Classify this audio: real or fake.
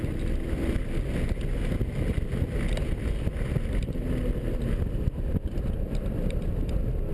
fake